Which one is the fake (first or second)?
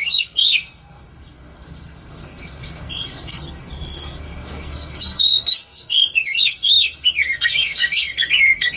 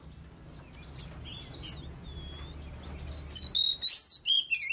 first